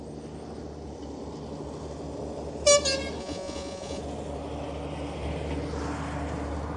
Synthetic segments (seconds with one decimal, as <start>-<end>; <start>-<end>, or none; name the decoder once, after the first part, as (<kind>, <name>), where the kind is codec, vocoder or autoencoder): 3.2-4.0 (vocoder, Vocos)